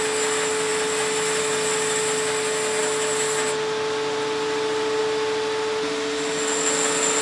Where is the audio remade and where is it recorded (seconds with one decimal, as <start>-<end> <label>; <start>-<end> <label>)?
0.0-7.2 recorded